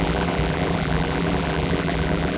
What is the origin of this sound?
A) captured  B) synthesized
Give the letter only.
B